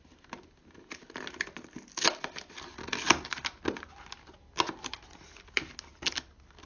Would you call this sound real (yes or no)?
yes